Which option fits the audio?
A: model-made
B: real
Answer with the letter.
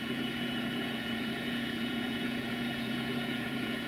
A